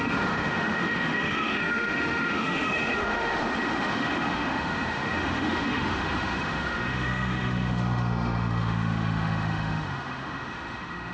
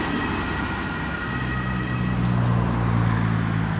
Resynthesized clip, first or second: first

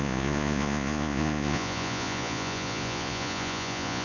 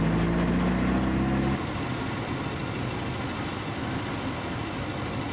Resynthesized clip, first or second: first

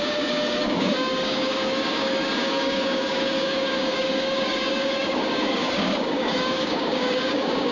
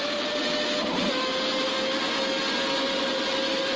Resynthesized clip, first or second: first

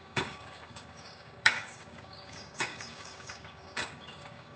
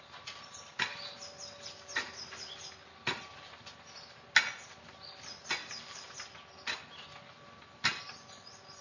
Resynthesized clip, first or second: first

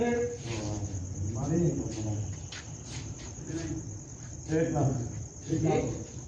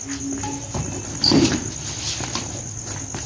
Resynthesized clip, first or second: first